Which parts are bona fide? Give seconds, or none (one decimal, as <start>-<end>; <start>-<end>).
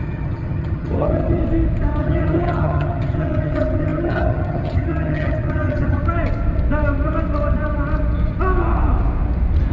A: 1.4-2.0; 6.0-9.7